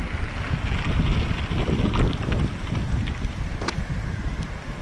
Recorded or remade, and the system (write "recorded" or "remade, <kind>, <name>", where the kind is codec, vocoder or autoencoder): recorded